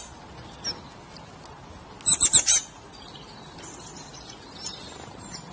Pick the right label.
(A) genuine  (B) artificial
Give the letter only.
A